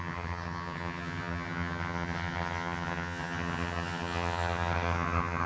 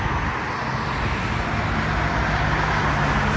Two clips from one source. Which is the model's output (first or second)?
first